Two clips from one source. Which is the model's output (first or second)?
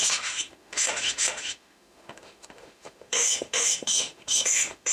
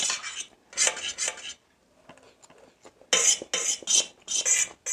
first